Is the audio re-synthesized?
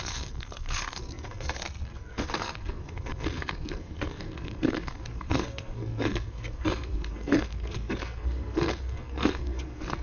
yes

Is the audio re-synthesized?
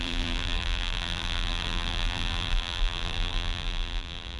yes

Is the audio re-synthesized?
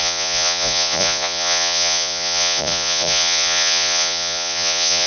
yes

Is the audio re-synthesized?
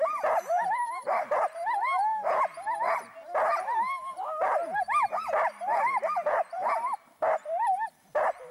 yes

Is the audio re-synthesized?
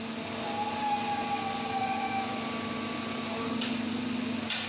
no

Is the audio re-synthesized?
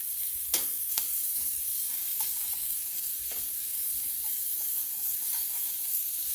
yes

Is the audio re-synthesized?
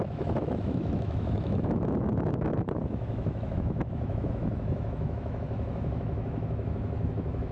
yes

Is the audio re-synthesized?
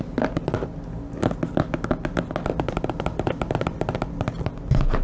no